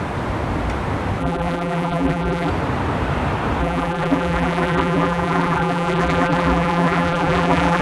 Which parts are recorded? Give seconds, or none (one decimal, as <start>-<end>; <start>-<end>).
0.0-1.2; 2.5-3.6